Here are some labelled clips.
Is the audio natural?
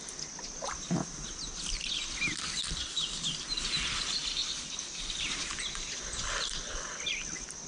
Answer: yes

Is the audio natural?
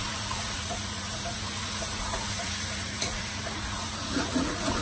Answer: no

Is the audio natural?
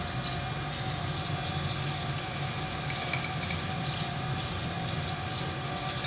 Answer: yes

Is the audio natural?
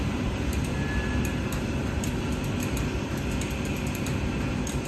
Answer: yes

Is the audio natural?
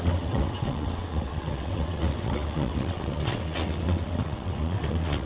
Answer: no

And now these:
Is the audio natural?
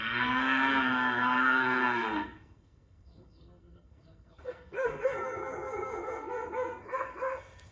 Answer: no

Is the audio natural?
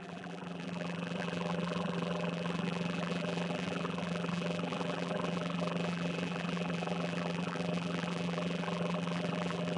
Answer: no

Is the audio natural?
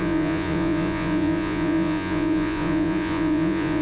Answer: no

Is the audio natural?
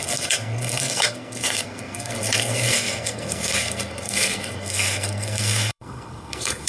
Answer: no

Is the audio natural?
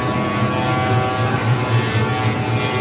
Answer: yes